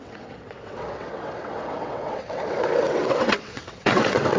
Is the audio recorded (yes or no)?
no